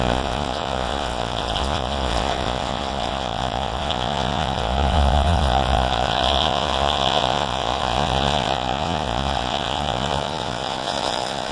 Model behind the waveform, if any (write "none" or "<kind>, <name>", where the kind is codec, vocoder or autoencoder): vocoder, Vocos